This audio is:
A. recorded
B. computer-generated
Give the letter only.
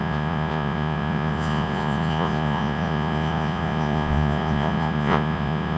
B